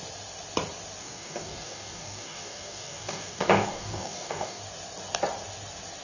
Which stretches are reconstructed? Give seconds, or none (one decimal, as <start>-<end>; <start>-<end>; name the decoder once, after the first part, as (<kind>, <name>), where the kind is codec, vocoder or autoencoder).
1.0-4.6 (codec, DAC)